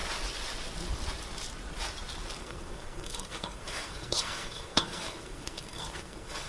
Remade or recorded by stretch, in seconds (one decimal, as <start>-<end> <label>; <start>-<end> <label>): 0.0-2.4 recorded; 2.4-6.5 remade